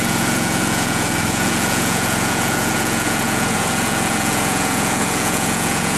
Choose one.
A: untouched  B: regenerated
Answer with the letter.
B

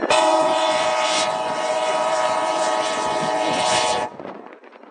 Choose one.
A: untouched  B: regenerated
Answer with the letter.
B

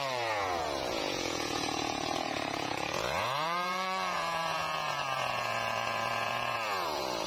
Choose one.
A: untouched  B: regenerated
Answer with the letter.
B